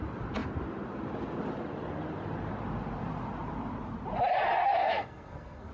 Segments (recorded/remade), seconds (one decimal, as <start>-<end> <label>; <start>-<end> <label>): 0.0-4.7 recorded; 4.7-5.7 remade